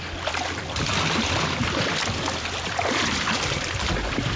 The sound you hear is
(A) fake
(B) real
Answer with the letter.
A